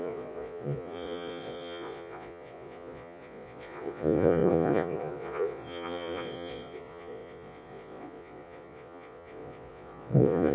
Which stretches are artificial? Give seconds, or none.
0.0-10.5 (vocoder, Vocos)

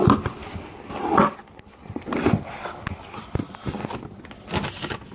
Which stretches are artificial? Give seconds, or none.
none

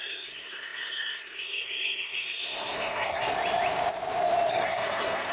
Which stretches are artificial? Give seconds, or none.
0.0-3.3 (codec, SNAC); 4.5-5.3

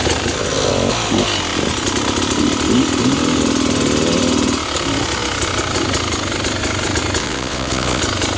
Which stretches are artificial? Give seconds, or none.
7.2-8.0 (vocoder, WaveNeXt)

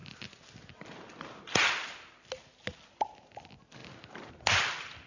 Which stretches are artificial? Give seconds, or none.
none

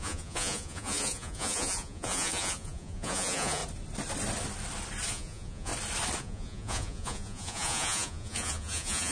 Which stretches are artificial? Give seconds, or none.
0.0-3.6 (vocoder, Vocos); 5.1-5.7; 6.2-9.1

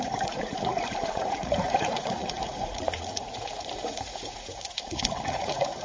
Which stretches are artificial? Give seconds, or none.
0.0-5.8 (vocoder, Vocos)